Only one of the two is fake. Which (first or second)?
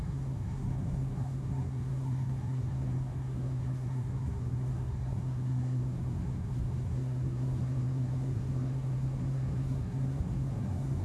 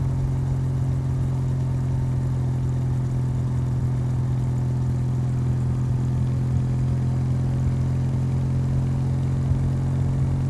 first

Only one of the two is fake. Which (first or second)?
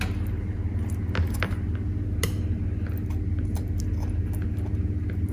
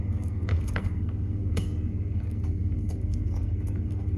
second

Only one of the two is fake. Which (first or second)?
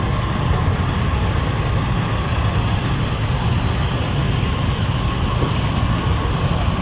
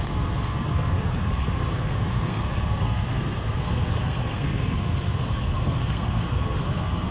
second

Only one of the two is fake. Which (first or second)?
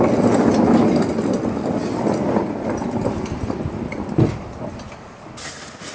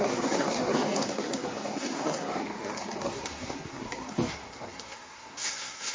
second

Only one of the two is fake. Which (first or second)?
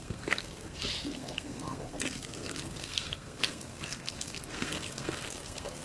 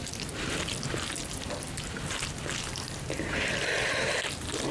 first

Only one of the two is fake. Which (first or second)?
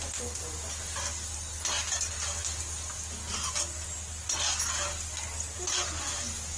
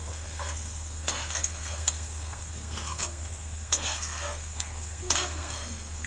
second